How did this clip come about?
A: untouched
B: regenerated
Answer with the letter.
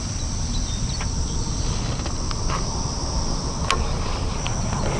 A